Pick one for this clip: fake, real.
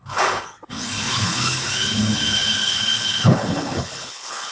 fake